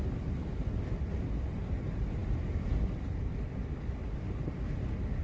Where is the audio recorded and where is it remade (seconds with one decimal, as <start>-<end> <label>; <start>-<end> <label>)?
0.0-0.6 recorded; 0.6-1.3 remade; 1.3-2.2 recorded; 2.2-3.3 remade; 3.3-5.2 recorded